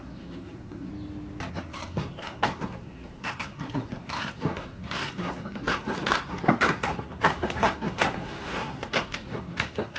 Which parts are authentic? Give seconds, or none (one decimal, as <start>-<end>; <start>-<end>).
0.9-1.5